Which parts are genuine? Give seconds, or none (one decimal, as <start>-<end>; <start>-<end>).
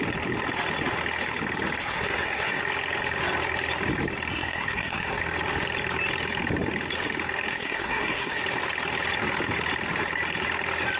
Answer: 0.0-1.8; 2.6-4.3; 5.2-7.5; 8.4-11.0